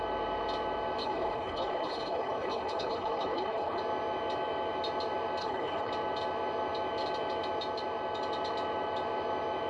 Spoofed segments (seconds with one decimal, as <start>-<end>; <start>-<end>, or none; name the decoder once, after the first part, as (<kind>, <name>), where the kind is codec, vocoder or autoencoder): 1.0-3.8 (codec, HILCodec); 5.4-5.9